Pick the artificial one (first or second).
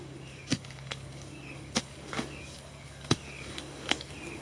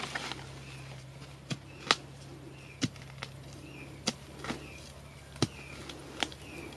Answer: first